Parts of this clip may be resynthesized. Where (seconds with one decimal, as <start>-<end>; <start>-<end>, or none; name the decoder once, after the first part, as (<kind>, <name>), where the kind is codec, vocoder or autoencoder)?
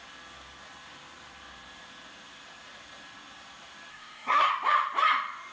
3.9-4.5 (codec, SNAC)